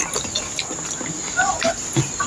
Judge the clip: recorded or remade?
recorded